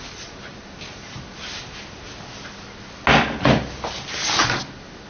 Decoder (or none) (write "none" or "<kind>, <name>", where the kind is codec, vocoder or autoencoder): none